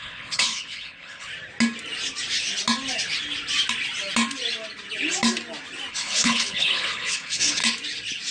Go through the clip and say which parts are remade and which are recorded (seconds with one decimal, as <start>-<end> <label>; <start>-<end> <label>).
0.0-1.3 remade; 1.3-5.9 recorded; 5.9-7.6 remade; 7.6-8.3 recorded